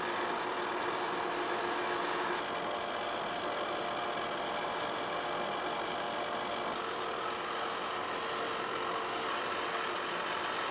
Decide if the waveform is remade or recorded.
recorded